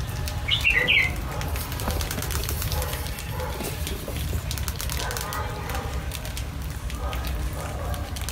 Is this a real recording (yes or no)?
yes